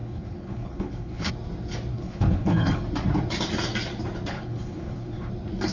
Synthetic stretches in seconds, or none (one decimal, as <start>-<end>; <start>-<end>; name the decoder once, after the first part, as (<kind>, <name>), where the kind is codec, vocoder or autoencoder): 0.0-1.3 (codec, HILCodec); 1.9-2.8; 4.3-5.3